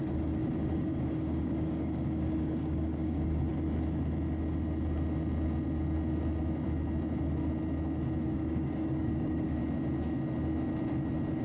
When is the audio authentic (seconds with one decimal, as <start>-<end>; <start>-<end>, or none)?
3.5-8.2; 9.6-11.4